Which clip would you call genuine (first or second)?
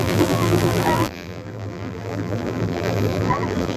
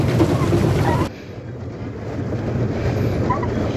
second